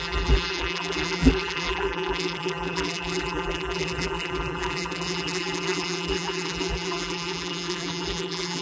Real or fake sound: fake